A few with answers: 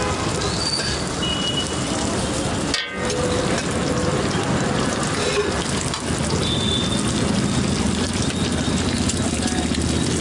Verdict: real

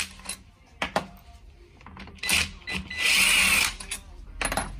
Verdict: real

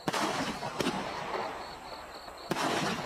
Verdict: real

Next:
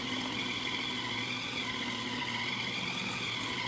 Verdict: real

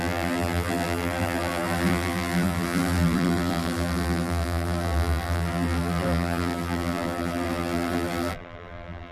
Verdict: fake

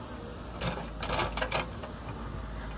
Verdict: real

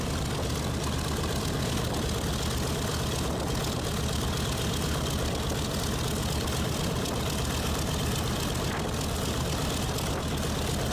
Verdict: real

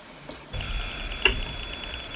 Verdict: fake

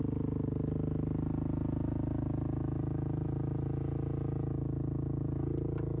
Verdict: real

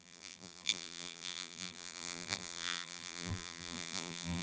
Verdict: fake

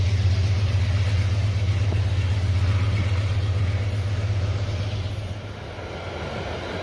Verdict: real